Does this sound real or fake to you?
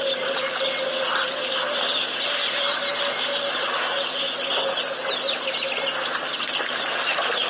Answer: fake